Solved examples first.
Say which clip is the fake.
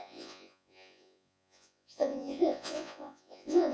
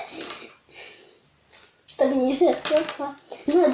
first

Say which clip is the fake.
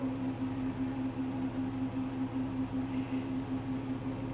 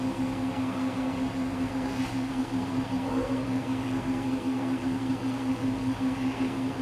second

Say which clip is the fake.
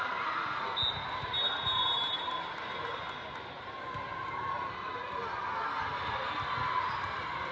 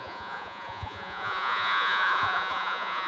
second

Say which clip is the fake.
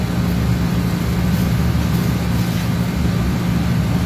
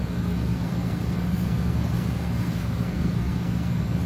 second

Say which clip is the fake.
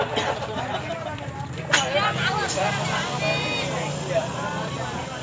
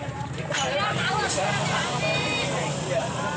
second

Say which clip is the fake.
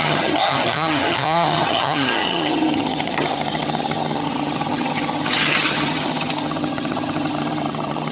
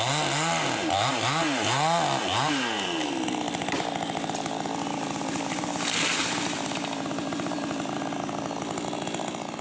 first